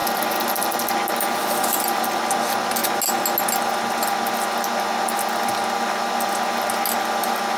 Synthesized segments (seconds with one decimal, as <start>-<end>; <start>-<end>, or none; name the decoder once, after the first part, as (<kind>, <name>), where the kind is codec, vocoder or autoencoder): none